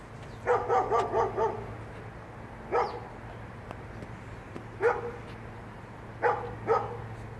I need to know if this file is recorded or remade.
recorded